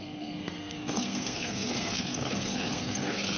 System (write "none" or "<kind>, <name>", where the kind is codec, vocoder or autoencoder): codec, SNAC